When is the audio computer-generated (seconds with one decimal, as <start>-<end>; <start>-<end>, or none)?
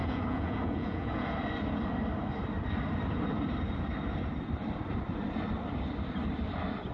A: 0.0-1.3